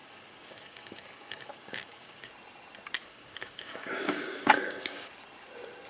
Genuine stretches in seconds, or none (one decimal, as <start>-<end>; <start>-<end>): 2.3-3.0; 5.1-5.9